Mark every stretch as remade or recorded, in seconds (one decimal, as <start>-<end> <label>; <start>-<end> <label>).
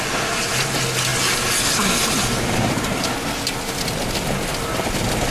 0.0-5.3 recorded